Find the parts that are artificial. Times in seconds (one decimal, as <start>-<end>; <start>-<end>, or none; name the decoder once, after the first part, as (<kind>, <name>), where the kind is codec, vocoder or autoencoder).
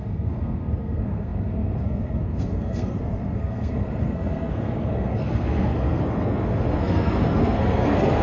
0.0-8.2 (codec, SNAC)